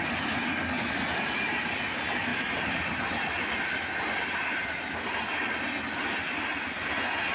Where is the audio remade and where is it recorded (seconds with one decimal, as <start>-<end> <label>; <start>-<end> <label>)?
0.0-2.3 recorded; 2.3-3.8 remade; 3.8-7.3 recorded